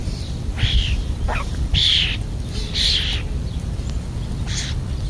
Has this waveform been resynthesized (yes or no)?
no